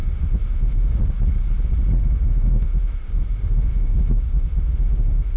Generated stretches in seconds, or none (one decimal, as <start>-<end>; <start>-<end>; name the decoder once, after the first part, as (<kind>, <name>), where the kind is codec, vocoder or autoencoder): 0.0-1.0 (autoencoder, DAC-VAE); 2.0-5.4